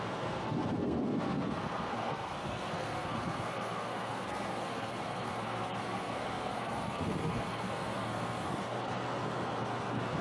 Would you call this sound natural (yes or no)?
no